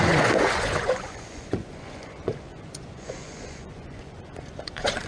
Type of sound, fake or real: fake